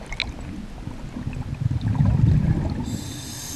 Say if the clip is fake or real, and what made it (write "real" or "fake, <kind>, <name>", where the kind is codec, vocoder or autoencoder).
real